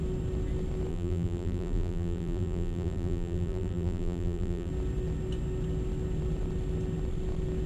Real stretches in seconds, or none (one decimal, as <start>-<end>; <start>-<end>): 0.0-0.9; 4.7-7.7